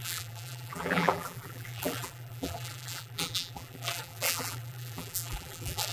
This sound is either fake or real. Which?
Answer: fake